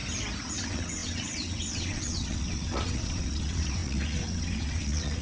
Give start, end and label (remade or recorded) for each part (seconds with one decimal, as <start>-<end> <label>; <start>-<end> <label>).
0.0-0.5 recorded; 0.5-5.2 remade